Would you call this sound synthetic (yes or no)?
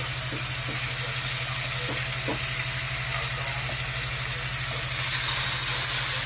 no